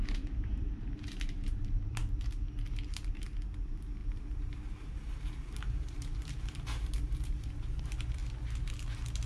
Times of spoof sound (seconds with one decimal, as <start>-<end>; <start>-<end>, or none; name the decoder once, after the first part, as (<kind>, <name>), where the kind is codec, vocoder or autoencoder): 0.0-2.0 (vocoder, BigVGAN v2); 3.1-8.2